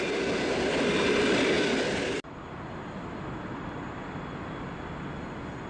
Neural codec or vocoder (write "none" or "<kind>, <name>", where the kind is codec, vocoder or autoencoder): none